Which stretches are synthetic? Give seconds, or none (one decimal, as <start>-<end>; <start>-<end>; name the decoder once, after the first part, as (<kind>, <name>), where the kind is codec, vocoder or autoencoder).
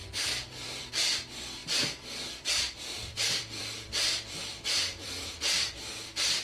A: 0.0-0.9 (vocoder, BigVGAN v2); 1.6-5.4